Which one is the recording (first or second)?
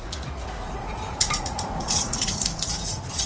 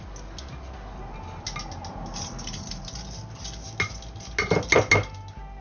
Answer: second